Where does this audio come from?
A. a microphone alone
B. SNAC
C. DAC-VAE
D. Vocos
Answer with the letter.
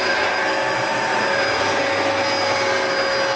A